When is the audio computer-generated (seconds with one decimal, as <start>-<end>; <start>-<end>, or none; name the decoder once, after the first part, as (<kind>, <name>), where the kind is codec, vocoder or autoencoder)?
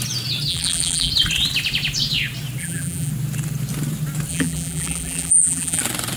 0.5-1.1 (vocoder, BigVGAN v2); 2.6-3.1; 4.3-5.8